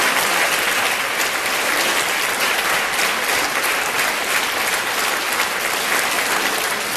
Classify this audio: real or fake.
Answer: real